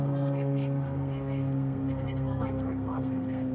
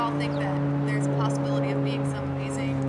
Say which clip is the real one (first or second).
second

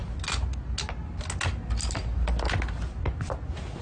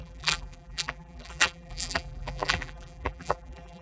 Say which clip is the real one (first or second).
first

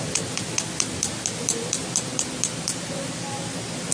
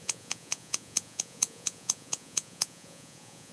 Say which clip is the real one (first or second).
first